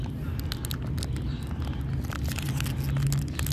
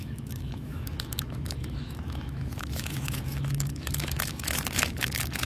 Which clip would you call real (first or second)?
first